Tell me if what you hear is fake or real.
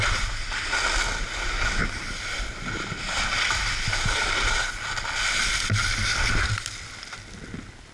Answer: real